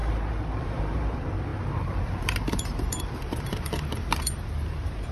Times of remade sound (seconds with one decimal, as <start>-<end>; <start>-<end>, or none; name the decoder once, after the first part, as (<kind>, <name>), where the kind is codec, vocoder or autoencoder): 0.0-5.1 (vocoder, BigVGAN v2)